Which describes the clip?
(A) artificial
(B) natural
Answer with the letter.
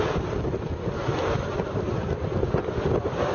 B